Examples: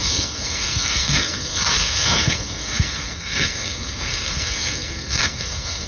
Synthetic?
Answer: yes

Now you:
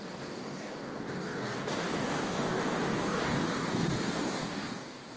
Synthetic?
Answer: yes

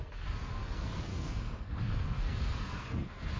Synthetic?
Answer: yes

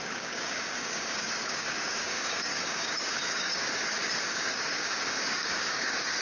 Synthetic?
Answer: yes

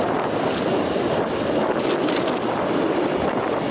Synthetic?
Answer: no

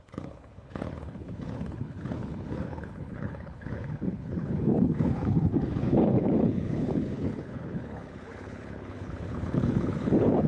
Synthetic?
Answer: yes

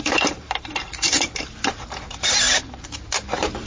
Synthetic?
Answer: yes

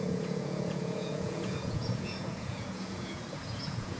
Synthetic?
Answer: yes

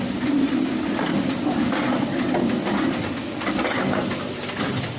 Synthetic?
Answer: no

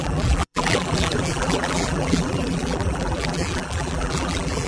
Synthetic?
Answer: yes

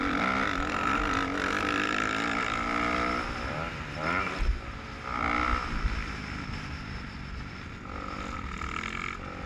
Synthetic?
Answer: no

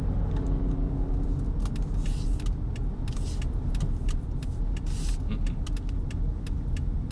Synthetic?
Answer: no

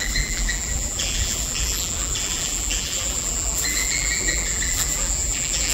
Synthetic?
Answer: yes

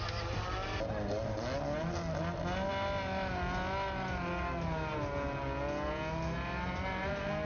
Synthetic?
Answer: no